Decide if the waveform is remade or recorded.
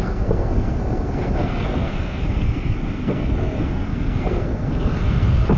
remade